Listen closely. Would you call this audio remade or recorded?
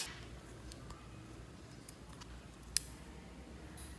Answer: recorded